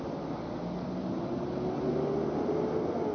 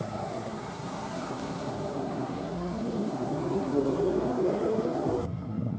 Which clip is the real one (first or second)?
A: first